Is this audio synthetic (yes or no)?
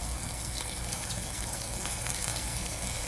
yes